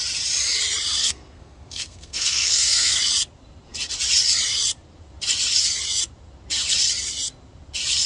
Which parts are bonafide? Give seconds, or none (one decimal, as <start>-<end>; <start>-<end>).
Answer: 0.0-1.0; 3.0-8.1